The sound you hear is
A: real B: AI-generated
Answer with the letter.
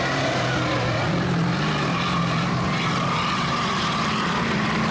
B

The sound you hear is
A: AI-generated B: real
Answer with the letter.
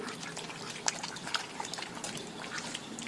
B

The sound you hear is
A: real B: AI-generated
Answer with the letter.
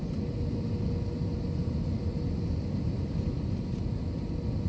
A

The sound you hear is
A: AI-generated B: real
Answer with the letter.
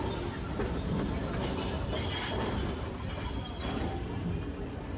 B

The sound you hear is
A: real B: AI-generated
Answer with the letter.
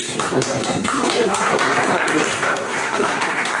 B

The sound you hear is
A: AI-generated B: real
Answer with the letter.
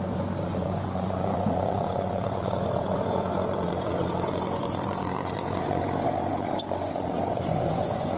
A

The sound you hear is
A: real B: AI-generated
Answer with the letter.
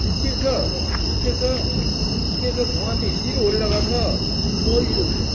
A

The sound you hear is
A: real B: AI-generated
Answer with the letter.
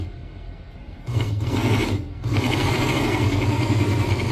B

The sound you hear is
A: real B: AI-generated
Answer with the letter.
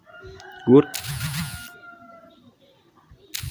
A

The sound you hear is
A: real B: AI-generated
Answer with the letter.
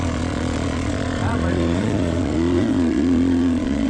B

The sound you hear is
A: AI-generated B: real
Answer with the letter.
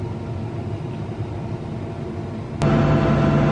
B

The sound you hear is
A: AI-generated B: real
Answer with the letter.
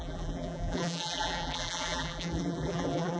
A